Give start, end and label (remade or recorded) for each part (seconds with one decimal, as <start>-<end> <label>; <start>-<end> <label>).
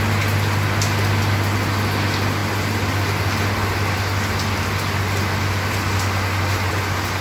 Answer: 0.0-7.2 recorded